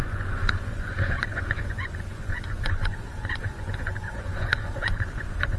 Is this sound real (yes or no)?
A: no